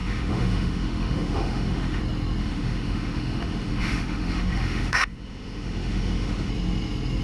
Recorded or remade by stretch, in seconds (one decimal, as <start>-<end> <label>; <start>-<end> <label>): 0.0-2.0 remade; 2.0-2.4 recorded; 2.4-6.5 remade; 6.5-7.2 recorded